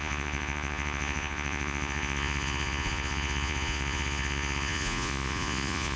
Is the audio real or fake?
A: fake